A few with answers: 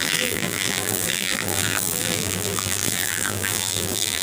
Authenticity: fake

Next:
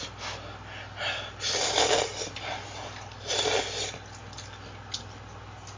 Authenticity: real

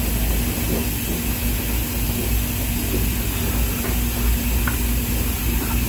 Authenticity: real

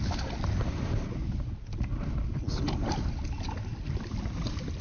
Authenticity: real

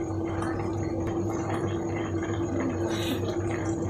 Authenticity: fake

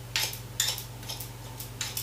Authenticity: real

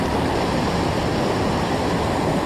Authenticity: real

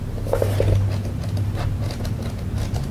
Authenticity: real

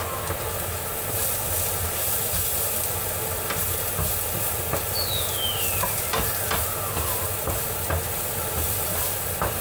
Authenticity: real